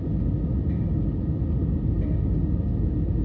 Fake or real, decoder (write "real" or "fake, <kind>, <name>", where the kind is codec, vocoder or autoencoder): real